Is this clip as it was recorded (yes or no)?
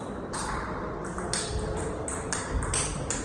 yes